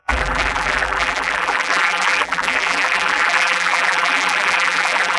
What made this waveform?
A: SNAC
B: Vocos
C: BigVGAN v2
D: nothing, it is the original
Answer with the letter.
C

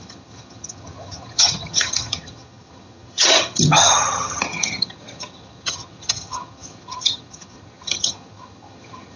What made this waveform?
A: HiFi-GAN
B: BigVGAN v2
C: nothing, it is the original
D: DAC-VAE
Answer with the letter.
A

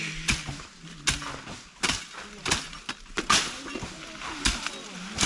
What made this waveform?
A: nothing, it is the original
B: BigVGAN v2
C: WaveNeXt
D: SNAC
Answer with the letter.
A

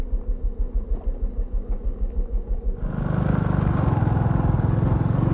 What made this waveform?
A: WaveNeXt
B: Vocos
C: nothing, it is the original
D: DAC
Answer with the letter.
C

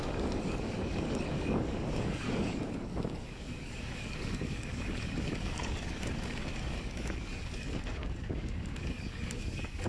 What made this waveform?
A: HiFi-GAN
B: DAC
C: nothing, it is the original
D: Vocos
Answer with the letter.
B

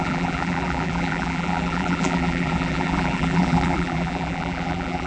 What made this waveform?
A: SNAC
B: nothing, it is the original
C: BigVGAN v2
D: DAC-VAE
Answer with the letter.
C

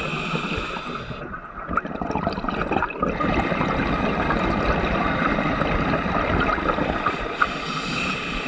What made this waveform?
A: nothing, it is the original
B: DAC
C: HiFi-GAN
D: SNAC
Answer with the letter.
A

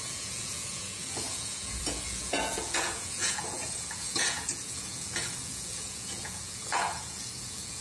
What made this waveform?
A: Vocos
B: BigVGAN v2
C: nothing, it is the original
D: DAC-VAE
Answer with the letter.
A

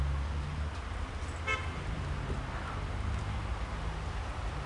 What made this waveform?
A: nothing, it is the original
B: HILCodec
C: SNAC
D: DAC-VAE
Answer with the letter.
A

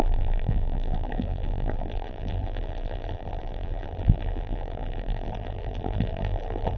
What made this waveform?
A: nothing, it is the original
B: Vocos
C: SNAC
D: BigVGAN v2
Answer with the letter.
D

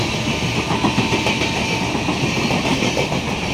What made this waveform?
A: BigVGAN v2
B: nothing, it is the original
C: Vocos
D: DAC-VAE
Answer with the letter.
B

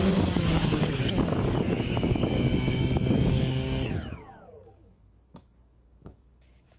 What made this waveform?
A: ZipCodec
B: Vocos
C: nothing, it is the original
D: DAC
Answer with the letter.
D